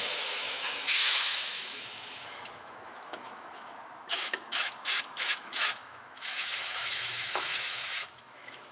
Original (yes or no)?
no